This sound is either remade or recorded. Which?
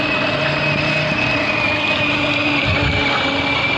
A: recorded